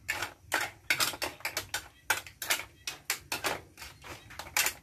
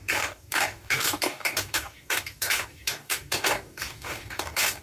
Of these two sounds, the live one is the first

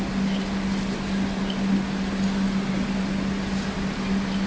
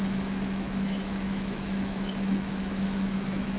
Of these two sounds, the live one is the first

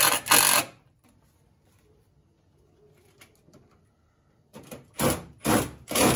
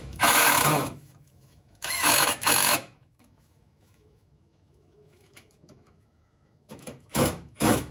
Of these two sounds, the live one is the first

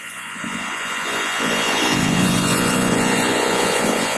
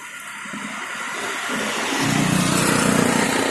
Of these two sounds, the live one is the second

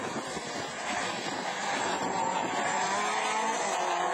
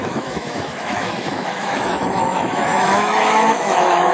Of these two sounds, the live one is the first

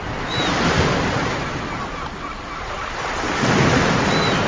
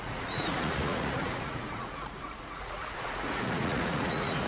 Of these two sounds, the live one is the first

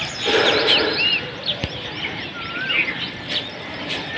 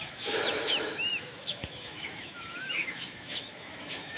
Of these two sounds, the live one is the first